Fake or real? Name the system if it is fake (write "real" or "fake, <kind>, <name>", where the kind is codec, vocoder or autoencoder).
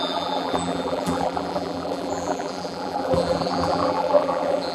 fake, vocoder, BigVGAN v2